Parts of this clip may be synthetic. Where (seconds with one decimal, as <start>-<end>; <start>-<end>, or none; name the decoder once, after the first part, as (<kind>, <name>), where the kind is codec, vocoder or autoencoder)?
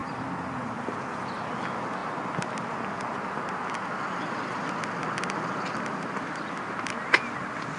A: 0.0-1.6 (vocoder, BigVGAN v2)